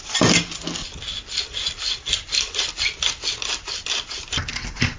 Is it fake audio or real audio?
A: real